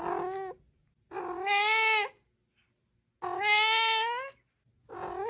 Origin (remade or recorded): recorded